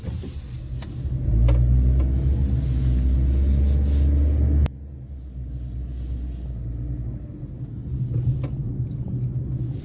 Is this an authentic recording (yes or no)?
yes